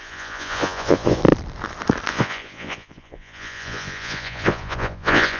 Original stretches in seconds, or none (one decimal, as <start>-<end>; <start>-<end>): 1.2-2.1